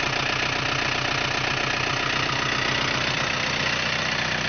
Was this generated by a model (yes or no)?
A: no